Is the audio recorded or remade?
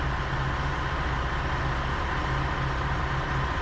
recorded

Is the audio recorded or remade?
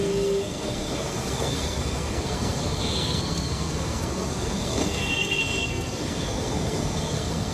remade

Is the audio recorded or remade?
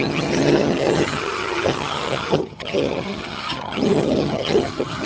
remade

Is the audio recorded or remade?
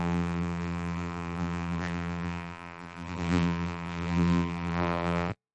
remade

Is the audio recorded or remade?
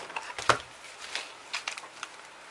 recorded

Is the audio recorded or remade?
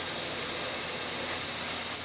recorded